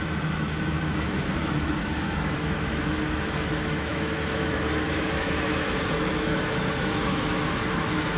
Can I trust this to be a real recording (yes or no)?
no